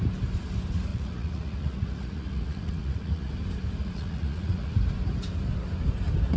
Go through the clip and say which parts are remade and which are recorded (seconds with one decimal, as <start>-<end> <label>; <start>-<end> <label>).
0.0-0.9 recorded; 0.9-3.3 remade; 3.3-3.8 recorded; 3.8-4.8 remade; 4.8-6.4 recorded